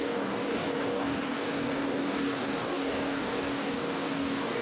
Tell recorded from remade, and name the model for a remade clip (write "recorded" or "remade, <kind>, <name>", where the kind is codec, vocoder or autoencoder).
remade, codec, DAC